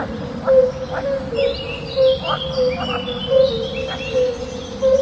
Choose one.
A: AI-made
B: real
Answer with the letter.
B